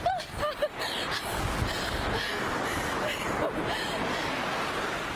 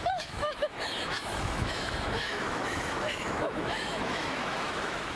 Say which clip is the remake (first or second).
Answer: second